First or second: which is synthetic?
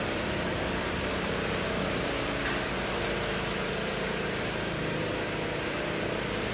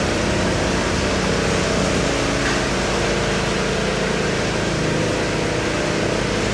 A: first